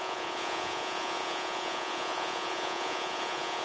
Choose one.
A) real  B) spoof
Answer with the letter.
B